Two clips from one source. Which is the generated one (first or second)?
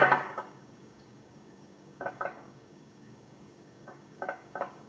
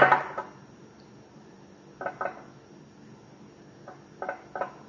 first